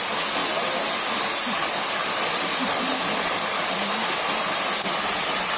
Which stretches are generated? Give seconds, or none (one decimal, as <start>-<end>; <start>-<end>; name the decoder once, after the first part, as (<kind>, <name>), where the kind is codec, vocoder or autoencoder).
none